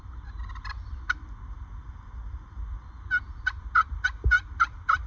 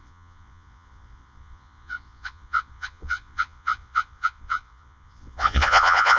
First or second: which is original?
first